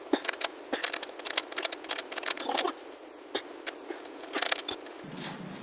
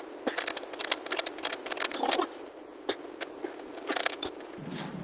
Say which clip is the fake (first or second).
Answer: second